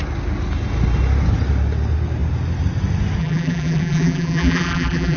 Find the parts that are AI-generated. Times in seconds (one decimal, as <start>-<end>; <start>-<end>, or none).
3.2-5.2